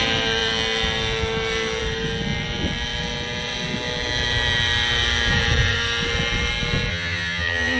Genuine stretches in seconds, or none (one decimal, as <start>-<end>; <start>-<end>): 0.0-6.9